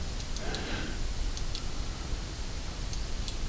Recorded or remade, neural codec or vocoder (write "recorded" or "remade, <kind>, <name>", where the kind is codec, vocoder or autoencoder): recorded